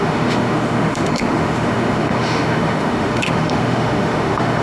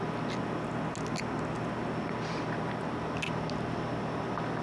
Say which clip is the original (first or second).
second